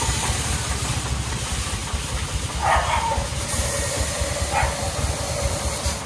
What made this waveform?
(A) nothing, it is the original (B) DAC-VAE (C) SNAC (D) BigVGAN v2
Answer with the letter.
A